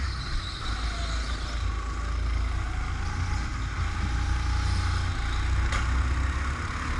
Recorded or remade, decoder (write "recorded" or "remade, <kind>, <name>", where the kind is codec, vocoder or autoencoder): recorded